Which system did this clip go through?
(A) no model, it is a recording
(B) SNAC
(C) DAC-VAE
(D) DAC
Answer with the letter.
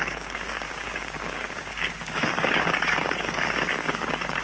D